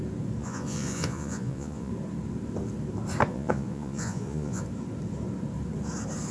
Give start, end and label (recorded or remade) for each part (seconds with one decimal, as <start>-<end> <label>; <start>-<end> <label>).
0.0-0.4 recorded; 0.4-1.9 remade; 1.9-3.3 recorded; 3.3-4.6 remade; 4.6-6.3 recorded